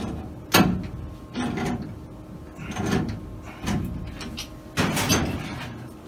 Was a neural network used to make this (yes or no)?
no